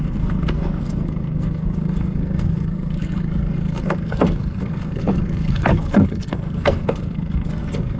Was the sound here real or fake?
fake